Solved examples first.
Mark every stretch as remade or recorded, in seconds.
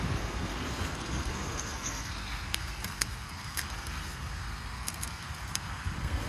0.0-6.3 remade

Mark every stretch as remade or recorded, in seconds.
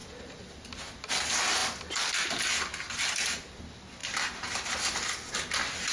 0.0-4.0 recorded; 4.0-4.7 remade; 4.7-5.9 recorded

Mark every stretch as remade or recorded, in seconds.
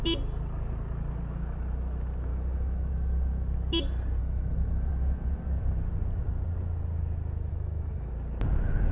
0.0-2.3 recorded; 2.3-2.9 remade; 2.9-4.2 recorded; 4.2-4.9 remade; 4.9-7.5 recorded; 7.5-8.1 remade; 8.1-8.9 recorded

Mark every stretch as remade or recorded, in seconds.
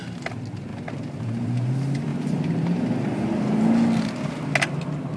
0.0-0.7 recorded; 0.7-1.7 remade; 1.7-2.1 recorded; 2.1-2.9 remade; 2.9-5.2 recorded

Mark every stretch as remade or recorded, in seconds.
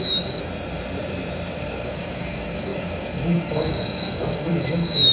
0.0-0.4 remade; 0.4-1.6 recorded; 1.6-5.1 remade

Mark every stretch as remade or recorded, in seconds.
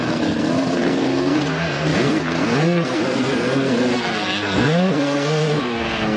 0.0-6.2 remade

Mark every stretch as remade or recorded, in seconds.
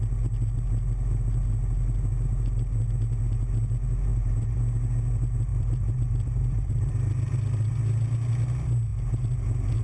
0.0-4.1 recorded; 4.1-4.6 remade; 4.6-5.5 recorded; 5.5-6.9 remade; 6.9-9.8 recorded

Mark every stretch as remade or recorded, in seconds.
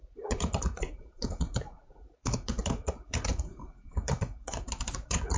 0.0-5.4 remade